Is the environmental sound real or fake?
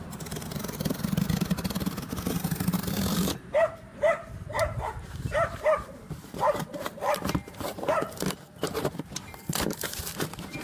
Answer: fake